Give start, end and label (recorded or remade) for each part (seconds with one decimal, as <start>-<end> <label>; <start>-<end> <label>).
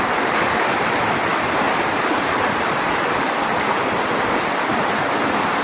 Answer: 0.0-5.6 recorded